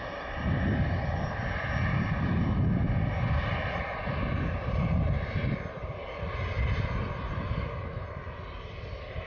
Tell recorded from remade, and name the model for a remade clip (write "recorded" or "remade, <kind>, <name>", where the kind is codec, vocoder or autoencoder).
recorded